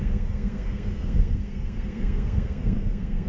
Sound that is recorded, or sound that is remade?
remade